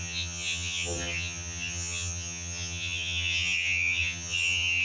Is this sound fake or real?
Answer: fake